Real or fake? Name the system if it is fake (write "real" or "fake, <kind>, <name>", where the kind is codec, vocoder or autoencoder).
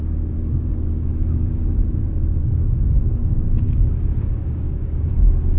fake, codec, DAC